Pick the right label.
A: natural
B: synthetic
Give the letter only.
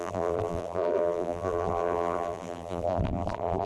B